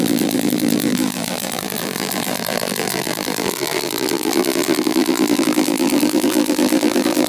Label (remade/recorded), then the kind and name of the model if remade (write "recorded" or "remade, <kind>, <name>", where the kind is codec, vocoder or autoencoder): remade, vocoder, BigVGAN v2